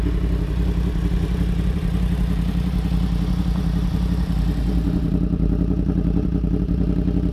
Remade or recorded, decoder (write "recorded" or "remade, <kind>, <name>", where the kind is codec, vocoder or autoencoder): remade, vocoder, BigVGAN v2